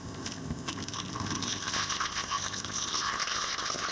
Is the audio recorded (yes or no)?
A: no